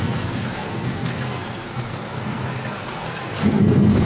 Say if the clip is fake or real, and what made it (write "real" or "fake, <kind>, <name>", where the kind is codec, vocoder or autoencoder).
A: fake, codec, SNAC